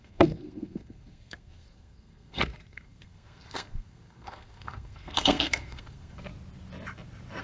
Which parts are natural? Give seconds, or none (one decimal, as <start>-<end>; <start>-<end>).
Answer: 6.3-7.4